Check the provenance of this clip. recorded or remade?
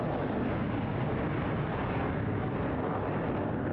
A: recorded